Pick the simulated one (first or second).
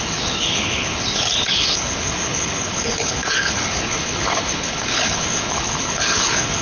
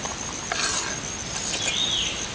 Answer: first